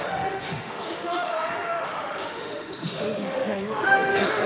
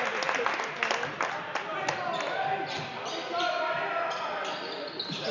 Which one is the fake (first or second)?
first